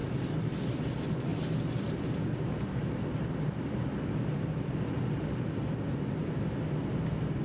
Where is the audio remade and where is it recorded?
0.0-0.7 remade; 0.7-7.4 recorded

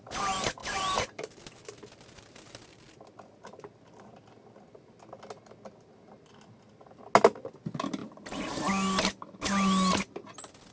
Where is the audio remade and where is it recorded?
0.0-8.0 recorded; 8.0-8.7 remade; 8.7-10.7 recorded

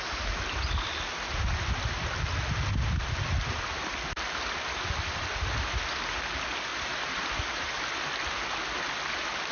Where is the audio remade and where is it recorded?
0.0-6.7 recorded; 6.7-7.8 remade; 7.8-9.5 recorded

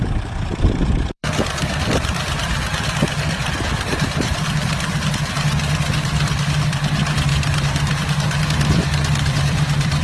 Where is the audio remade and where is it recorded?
0.0-10.0 remade

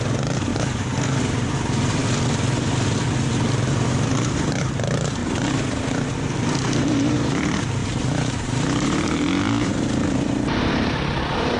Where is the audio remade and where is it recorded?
0.0-2.0 remade; 2.0-3.7 recorded; 3.7-5.2 remade; 5.2-6.5 recorded; 6.5-11.6 remade

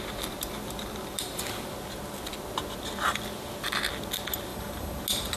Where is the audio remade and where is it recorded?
0.0-4.5 recorded; 4.5-5.0 remade; 5.0-5.4 recorded

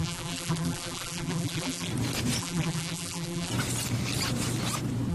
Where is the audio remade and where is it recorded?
0.0-1.9 remade; 1.9-2.4 recorded; 2.4-3.5 remade; 3.5-5.1 recorded